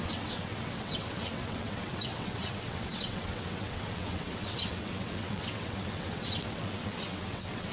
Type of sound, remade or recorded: remade